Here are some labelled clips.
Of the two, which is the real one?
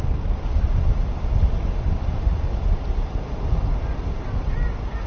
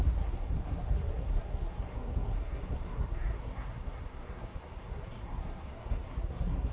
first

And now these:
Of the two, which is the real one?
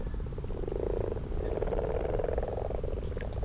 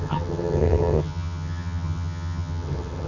first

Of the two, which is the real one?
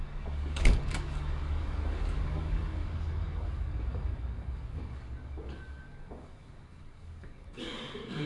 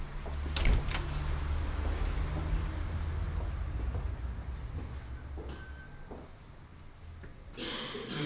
second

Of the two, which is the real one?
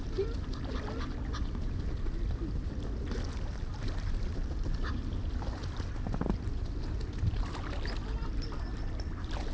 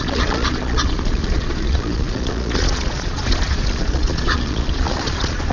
first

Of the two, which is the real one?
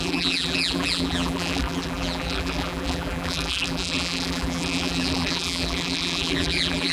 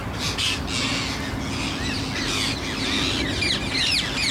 second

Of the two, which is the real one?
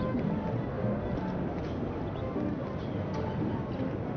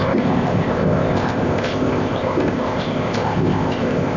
first